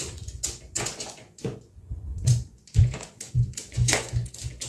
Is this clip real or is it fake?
fake